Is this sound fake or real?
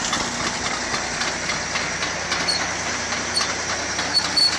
real